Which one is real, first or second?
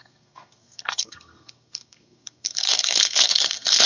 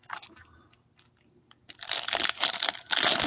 second